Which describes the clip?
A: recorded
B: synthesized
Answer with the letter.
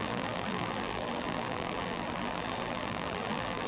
B